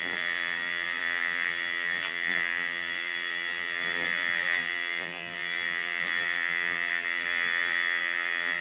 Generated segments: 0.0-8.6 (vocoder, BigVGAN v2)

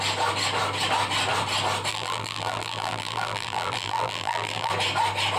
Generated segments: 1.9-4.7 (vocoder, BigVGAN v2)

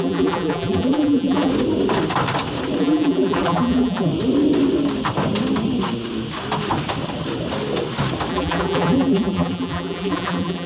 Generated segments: 0.0-1.5 (vocoder, BigVGAN v2); 2.8-4.1; 8.3-10.7

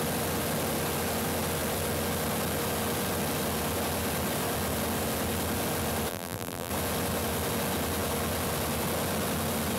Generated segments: 6.1-6.7 (vocoder, BigVGAN v2)